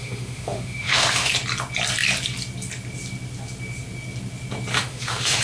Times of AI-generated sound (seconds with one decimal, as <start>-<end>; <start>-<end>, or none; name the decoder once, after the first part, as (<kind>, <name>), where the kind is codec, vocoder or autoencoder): 0.0-1.3 (autoencoder, DAC-VAE); 4.7-5.4